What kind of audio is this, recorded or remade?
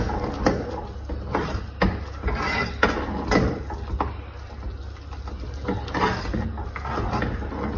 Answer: recorded